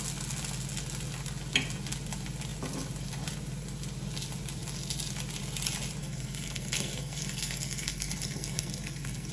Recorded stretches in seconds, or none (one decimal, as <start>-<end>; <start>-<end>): 0.0-6.0